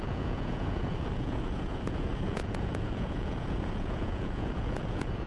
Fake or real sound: fake